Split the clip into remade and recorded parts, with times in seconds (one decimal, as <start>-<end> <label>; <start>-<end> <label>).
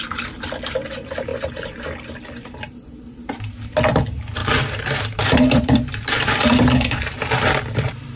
0.0-1.3 recorded; 1.3-3.4 remade; 3.4-4.4 recorded; 4.4-8.2 remade